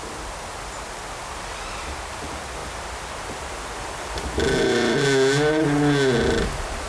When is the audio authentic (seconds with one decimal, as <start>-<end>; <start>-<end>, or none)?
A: 0.0-6.9